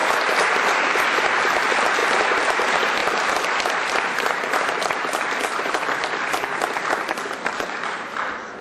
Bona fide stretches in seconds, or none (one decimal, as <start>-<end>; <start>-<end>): 1.1-2.0; 2.6-3.0; 7.8-8.6